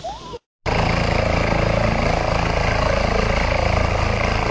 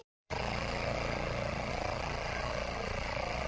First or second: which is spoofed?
second